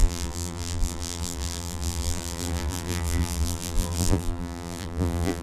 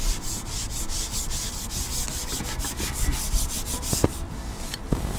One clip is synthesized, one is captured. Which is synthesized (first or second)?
first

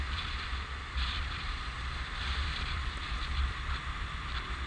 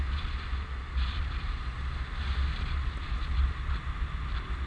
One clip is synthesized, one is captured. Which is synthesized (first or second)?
first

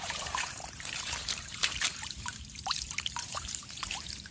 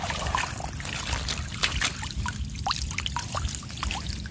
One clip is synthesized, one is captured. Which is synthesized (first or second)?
first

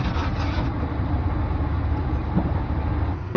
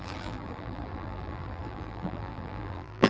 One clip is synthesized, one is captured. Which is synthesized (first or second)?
second